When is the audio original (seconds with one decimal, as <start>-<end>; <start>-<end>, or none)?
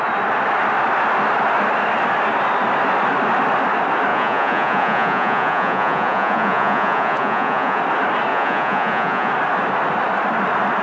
0.0-4.1; 7.8-8.3; 9.3-10.8